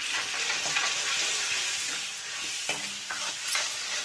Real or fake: real